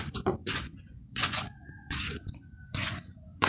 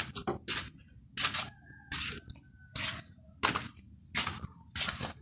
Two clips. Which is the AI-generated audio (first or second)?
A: first